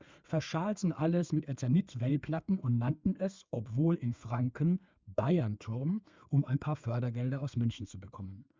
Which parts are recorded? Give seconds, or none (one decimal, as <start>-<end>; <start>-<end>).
none